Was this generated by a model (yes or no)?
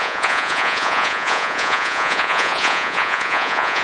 yes